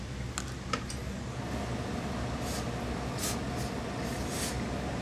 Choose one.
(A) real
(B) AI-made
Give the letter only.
A